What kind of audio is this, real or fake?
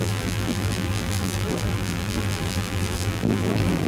fake